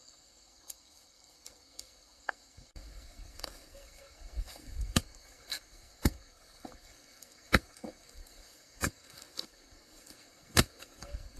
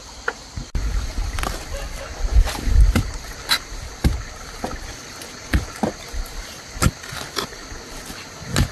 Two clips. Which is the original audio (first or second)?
second